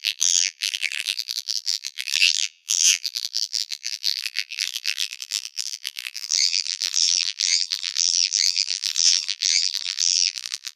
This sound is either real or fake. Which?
fake